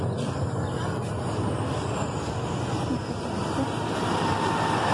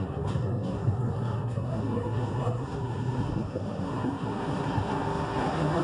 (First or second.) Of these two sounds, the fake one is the second